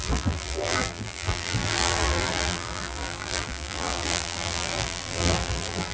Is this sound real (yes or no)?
no